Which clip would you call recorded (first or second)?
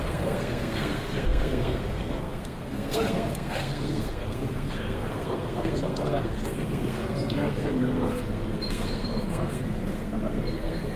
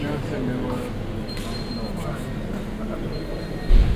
second